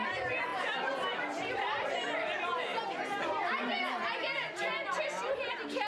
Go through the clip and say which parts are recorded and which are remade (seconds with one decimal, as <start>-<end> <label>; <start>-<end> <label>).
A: 0.0-0.5 recorded; 0.5-1.9 remade; 1.9-5.9 recorded